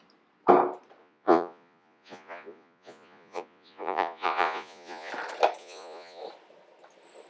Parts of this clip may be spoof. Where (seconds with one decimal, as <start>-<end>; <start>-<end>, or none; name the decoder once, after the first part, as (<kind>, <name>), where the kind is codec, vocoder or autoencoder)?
1.0-5.1 (vocoder, Vocos); 5.6-6.2